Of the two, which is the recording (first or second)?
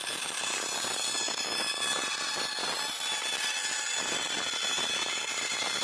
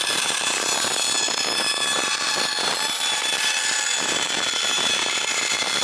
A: first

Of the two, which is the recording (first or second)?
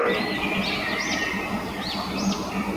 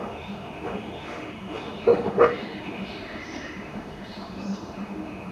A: first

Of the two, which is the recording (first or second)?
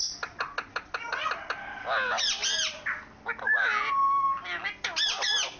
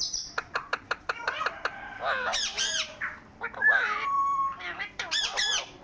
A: first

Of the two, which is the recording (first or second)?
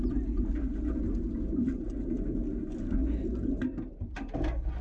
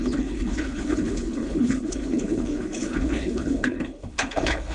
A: first